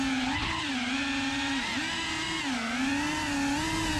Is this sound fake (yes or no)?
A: no